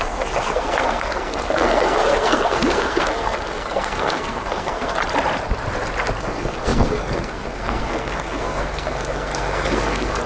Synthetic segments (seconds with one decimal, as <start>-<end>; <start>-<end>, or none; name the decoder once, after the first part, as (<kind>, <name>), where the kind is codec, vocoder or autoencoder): 0.0-5.0 (codec, SNAC); 6.2-10.3

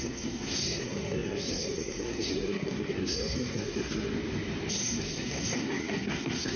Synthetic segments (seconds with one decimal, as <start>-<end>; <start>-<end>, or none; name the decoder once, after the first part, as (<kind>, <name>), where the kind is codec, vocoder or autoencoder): 0.0-4.1 (codec, SNAC); 4.7-6.6

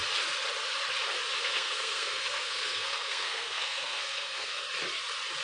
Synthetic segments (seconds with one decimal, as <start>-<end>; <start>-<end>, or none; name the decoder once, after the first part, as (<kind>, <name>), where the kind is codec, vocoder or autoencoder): 1.4-4.6 (codec, SNAC)

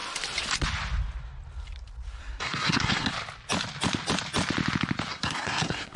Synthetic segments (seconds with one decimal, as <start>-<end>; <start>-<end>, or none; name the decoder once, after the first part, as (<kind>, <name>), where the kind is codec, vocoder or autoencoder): 2.2-3.1 (codec, SNAC); 5.1-6.0

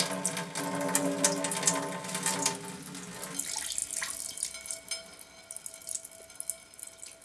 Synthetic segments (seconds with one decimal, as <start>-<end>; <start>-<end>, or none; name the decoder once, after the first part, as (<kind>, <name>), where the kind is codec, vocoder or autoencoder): none